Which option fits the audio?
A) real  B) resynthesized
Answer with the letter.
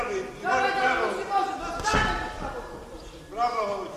A